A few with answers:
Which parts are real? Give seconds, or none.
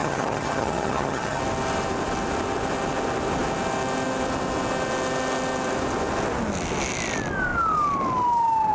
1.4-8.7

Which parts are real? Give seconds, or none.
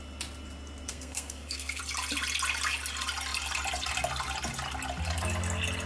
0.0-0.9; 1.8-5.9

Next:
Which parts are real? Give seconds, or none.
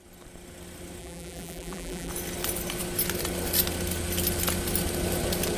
0.0-1.0; 2.1-5.6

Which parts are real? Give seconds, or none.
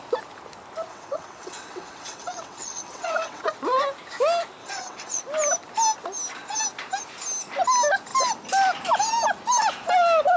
0.0-0.9; 3.4-4.6; 5.2-10.4